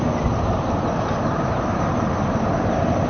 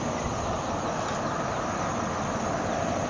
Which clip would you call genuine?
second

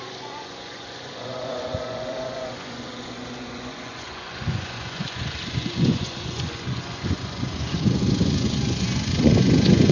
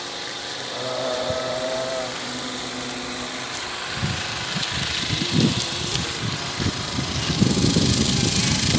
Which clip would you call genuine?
second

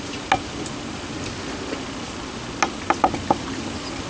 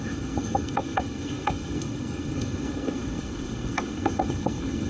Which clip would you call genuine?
first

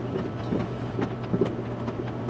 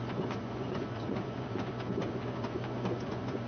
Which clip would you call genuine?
first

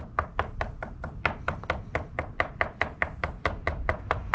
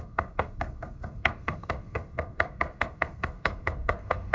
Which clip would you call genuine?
first